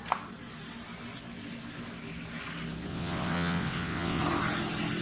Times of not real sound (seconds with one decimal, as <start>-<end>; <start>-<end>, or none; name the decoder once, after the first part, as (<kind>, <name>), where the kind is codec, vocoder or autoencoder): 2.9-4.2 (vocoder, WaveNeXt)

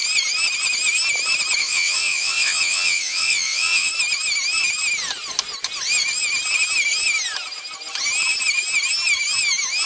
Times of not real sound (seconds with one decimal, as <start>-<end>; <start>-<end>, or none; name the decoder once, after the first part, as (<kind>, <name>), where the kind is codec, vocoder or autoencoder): 1.6-3.9 (vocoder, WaveNeXt)

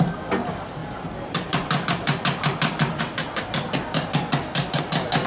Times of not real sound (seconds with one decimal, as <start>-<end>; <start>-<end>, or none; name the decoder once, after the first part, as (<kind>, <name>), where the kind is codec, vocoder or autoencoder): none

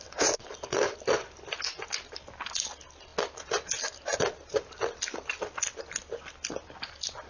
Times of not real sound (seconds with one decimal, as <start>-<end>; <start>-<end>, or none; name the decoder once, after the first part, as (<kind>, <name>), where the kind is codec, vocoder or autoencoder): none

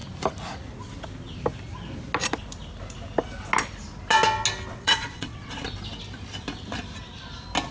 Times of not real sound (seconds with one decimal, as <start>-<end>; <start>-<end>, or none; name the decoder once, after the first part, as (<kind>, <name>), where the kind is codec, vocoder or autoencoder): 4.7-5.6 (vocoder, WaveNeXt)

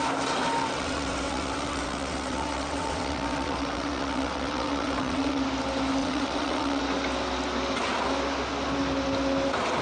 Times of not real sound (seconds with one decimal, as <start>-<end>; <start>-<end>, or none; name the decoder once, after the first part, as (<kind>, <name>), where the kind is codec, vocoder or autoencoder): 0.6-5.4 (vocoder, WaveNeXt); 6.0-6.8